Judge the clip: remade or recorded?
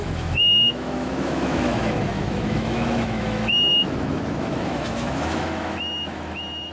remade